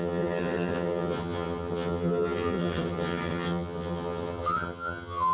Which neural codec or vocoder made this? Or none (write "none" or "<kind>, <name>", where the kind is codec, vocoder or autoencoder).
vocoder, HiFi-GAN